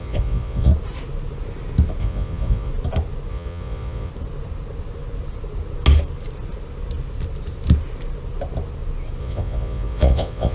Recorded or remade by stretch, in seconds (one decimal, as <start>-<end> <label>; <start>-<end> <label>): 0.0-0.7 remade; 0.7-2.0 recorded; 2.0-2.7 remade; 2.7-3.3 recorded; 3.3-4.1 remade; 4.1-9.2 recorded; 9.2-10.5 remade